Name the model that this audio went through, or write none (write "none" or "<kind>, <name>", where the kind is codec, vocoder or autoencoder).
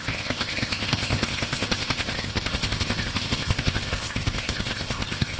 codec, ZipCodec